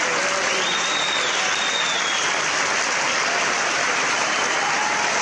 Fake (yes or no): no